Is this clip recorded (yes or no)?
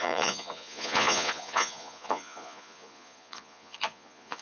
no